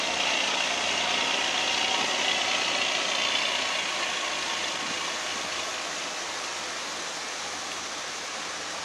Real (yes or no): yes